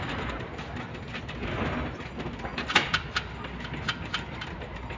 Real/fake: real